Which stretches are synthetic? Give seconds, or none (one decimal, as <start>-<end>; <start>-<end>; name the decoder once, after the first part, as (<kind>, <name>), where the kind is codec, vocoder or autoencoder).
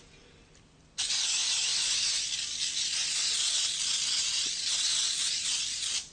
none